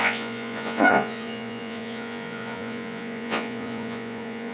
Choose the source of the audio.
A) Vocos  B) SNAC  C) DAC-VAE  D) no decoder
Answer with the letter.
A